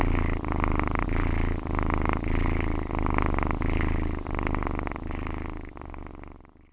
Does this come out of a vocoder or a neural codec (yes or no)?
no